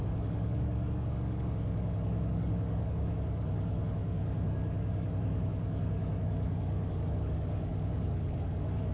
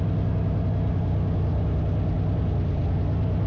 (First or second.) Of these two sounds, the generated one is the first